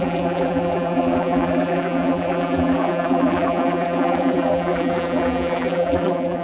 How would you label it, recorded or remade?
remade